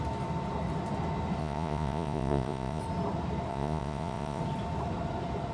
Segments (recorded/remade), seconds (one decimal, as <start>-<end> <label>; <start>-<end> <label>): 0.0-1.4 recorded; 1.4-2.8 remade; 2.8-3.5 recorded; 3.5-4.4 remade; 4.4-5.5 recorded